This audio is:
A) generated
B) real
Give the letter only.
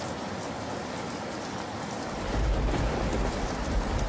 B